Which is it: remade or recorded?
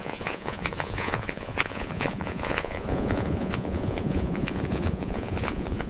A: remade